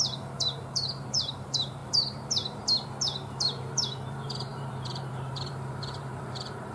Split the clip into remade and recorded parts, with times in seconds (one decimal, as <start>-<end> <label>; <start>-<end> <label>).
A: 0.0-6.7 remade